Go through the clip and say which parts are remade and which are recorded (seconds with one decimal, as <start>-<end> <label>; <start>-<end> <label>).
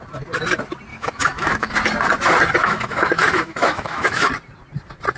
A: 0.0-0.9 recorded; 0.9-1.7 remade; 1.7-2.6 recorded; 2.6-4.3 remade; 4.3-5.2 recorded